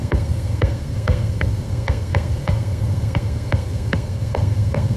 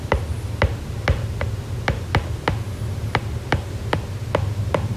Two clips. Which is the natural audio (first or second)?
second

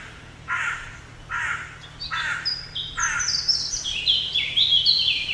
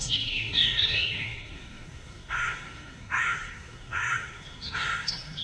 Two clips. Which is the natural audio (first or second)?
first